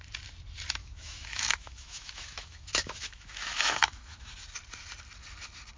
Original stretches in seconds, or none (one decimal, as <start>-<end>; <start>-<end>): 0.0-0.8; 4.3-5.8